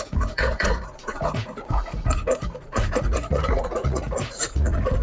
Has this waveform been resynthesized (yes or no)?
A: yes